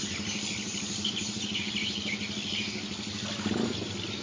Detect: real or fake real